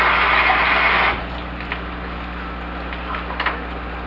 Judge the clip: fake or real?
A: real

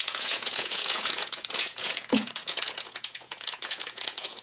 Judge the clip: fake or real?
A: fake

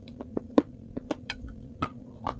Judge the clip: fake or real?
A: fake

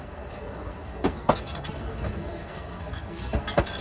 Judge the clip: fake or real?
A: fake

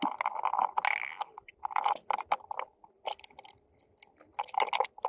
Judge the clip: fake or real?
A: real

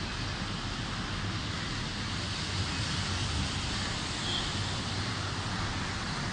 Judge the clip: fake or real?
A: real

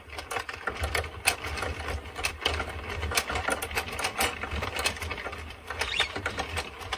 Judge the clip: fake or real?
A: real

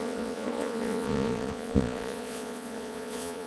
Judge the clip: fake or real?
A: fake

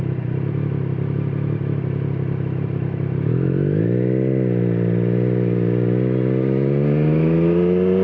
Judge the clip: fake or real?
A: real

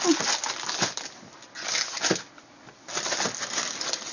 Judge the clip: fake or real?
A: real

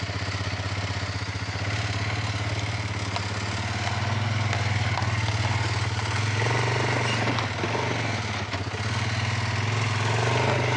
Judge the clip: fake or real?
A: real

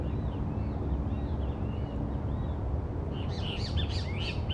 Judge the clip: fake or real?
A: real